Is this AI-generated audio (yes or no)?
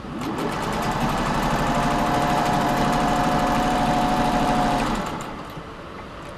yes